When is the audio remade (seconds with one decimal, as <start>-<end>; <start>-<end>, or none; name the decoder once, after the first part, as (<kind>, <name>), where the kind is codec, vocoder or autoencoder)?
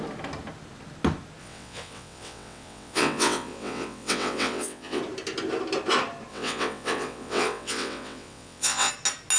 1.4-5.0 (vocoder, WaveNeXt); 6.3-8.9